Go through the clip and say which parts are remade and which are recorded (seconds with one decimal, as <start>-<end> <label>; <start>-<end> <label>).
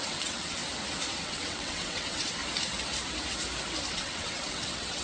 0.0-0.6 remade; 0.6-1.2 recorded; 1.2-2.4 remade; 2.4-3.9 recorded; 3.9-5.0 remade